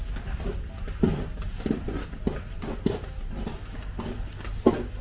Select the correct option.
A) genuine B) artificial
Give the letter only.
A